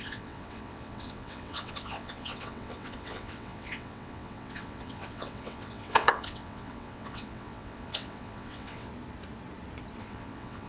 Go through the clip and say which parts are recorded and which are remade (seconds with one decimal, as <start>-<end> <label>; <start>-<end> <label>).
0.0-8.9 remade; 8.9-10.0 recorded; 10.0-10.7 remade